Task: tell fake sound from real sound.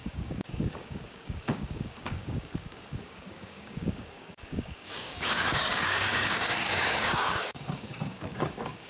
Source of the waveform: fake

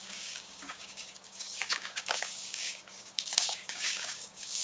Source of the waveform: fake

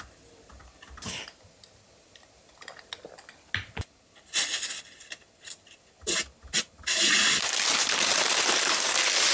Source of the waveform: real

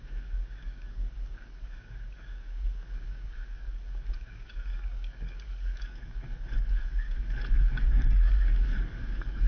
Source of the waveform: fake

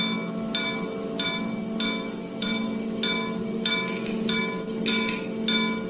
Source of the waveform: real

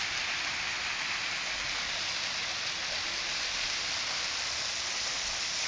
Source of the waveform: real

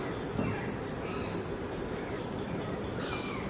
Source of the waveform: real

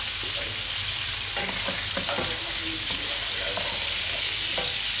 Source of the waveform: real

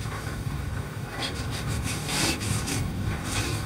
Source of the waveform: fake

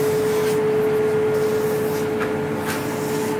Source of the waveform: real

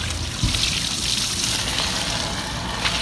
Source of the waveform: real